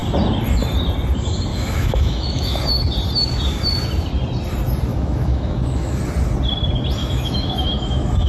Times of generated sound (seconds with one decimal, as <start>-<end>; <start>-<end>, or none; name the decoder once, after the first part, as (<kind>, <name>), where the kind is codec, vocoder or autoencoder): 1.5-2.6 (autoencoder, DAC-VAE); 4.9-6.0; 7.0-8.3